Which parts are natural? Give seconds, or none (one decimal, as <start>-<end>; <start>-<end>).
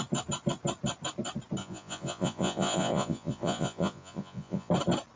0.0-1.6; 4.7-5.2